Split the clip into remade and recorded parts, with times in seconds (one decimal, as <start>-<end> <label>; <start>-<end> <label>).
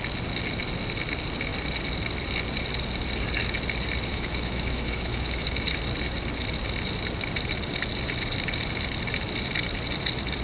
0.0-4.1 recorded; 4.1-5.8 remade; 5.8-10.4 recorded